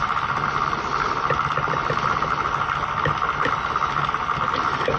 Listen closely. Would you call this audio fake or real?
real